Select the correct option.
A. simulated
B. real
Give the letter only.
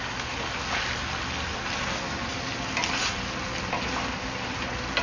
B